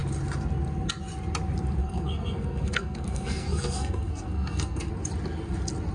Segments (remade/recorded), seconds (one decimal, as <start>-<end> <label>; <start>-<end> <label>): 0.0-1.8 recorded; 1.8-4.9 remade; 4.9-5.9 recorded